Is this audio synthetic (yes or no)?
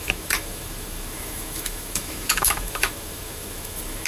yes